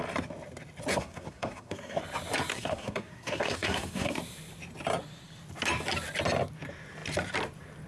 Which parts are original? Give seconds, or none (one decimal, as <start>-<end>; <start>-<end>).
0.0-0.9; 2.0-2.5; 4.2-7.9